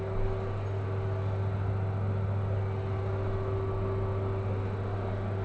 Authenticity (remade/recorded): recorded